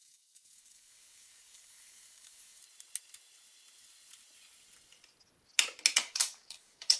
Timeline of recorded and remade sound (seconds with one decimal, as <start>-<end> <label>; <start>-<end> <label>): 0.0-2.6 remade; 2.6-6.0 recorded; 6.0-7.0 remade